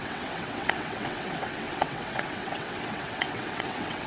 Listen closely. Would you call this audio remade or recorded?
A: remade